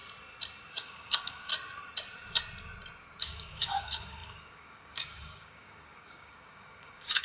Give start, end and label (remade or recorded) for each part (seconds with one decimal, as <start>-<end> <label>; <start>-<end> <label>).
0.0-0.7 recorded; 0.7-1.5 remade; 1.5-3.2 recorded; 3.2-7.2 remade